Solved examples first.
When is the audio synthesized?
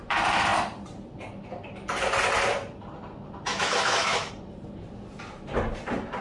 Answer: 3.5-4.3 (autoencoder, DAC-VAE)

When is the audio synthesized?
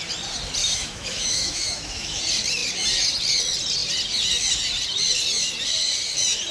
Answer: 0.6-2.2 (autoencoder, DAC-VAE)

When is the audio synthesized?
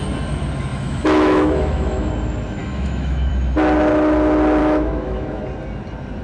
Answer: 0.7-2.1 (autoencoder, DAC-VAE); 2.6-3.3; 4.6-5.4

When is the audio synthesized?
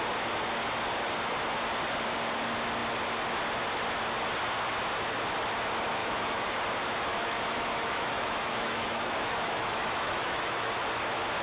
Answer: 6.0-6.6 (autoencoder, DAC-VAE); 7.1-10.7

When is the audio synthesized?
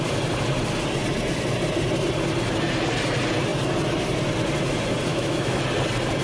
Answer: 5.1-5.6 (autoencoder, DAC-VAE)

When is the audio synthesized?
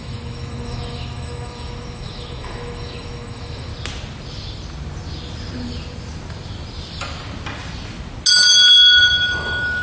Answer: 0.0-3.7 (autoencoder, DAC-VAE); 8.7-9.8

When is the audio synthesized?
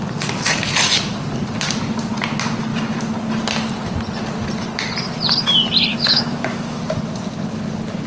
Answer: 5.9-6.8 (autoencoder, DAC-VAE)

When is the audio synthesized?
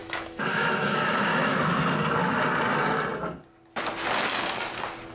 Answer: 0.0-1.6 (autoencoder, DAC-VAE)